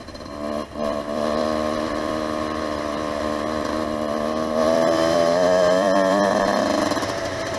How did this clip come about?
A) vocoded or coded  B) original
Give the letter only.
A